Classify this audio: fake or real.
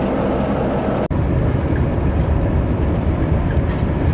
real